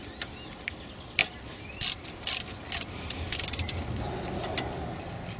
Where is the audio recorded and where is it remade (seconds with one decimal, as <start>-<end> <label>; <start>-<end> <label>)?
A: 0.0-5.4 recorded